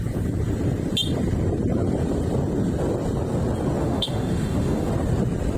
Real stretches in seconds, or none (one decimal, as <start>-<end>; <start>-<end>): 0.0-3.8; 4.9-5.6